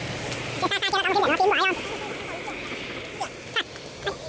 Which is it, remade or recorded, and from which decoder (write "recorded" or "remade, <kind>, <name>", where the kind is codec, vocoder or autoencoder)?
recorded